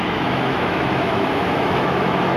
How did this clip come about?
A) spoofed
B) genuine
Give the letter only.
A